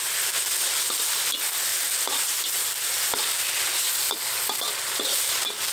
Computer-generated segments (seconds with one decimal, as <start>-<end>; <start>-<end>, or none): none